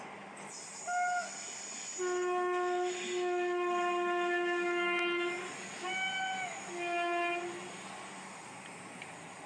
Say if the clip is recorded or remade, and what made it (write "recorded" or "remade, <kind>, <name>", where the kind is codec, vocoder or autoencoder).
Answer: recorded